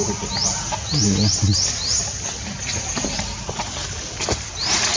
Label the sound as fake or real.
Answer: real